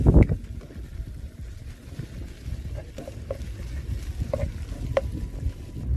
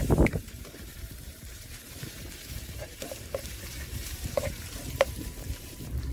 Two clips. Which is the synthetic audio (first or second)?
second